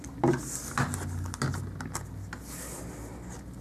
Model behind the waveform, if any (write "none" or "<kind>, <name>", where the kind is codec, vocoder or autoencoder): none